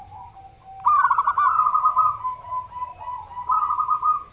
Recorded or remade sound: recorded